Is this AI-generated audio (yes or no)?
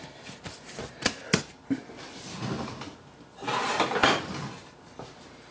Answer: no